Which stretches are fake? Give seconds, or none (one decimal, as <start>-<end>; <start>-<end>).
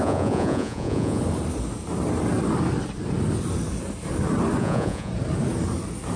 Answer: 0.0-1.2; 4.6-5.1